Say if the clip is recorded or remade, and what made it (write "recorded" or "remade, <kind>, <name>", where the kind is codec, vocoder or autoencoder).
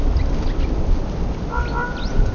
recorded